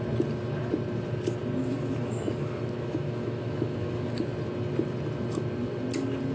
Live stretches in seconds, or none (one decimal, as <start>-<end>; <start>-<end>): 0.0-1.6; 4.2-6.3